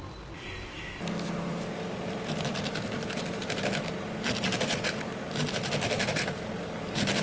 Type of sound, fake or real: real